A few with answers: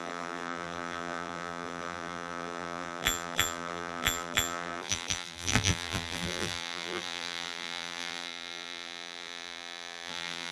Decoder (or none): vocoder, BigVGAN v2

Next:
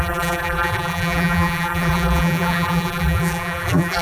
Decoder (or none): vocoder, BigVGAN v2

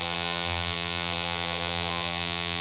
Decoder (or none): vocoder, BigVGAN v2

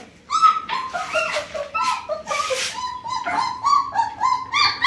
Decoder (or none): none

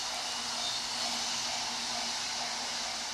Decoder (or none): none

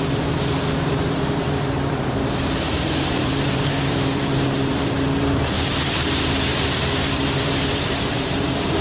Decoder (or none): vocoder, BigVGAN v2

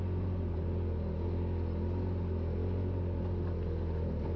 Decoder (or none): none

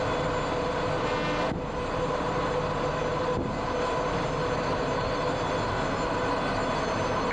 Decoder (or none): none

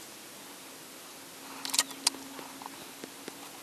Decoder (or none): none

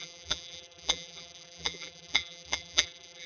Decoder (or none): vocoder, BigVGAN v2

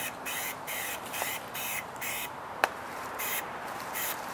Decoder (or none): vocoder, BigVGAN v2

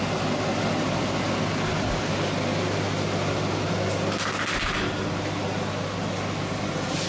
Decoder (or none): none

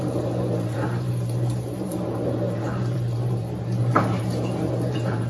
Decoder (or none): vocoder, BigVGAN v2